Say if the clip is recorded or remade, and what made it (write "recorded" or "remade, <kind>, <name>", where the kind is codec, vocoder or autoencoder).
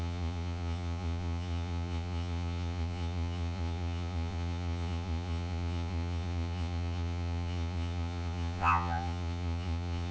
remade, vocoder, Vocos